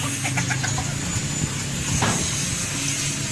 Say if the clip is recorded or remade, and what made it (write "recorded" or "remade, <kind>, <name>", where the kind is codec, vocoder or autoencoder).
recorded